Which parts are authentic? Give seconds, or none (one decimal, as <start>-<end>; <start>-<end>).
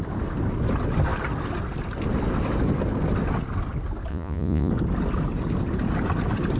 0.0-4.1; 4.7-6.6